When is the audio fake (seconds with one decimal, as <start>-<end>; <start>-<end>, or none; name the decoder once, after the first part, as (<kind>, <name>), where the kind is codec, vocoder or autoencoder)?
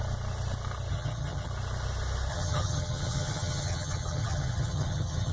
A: 0.9-1.5 (vocoder, HiFi-GAN); 2.3-5.3